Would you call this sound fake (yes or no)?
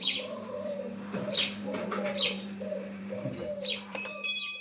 yes